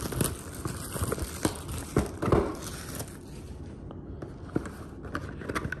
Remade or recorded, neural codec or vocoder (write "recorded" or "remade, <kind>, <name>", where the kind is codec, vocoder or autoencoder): recorded